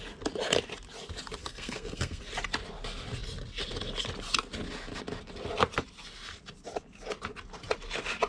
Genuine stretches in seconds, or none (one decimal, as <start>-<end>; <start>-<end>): 0.0-1.4; 2.2-8.3